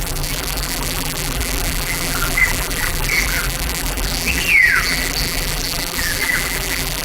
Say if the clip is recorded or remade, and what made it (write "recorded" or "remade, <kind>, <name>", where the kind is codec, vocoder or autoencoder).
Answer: remade, vocoder, BigVGAN v2